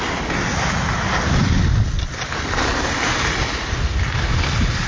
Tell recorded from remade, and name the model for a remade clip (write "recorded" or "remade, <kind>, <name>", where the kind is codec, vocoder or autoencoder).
recorded